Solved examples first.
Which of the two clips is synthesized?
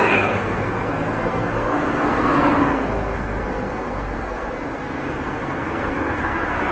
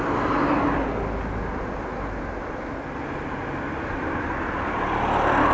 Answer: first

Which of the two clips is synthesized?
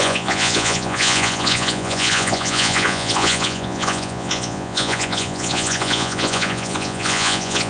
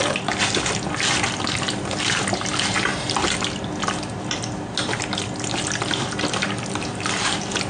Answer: first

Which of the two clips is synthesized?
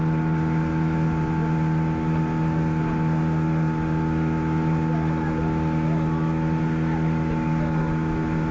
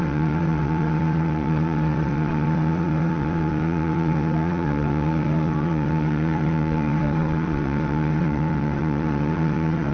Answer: second